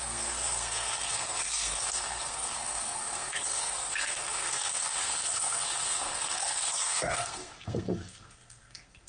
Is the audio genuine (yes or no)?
no